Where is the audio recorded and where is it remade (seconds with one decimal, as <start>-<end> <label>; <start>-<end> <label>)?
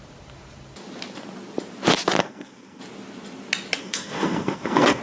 0.0-2.2 recorded; 2.2-2.8 remade; 2.8-3.8 recorded; 3.8-5.0 remade